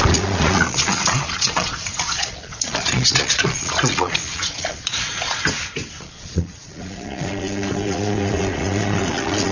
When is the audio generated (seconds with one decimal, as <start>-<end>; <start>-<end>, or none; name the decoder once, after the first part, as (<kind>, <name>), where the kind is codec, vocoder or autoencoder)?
0.0-5.4 (vocoder, Vocos); 6.0-9.5